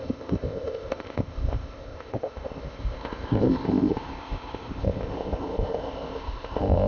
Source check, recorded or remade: remade